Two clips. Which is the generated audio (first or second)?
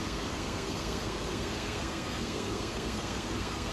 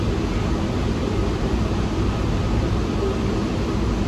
first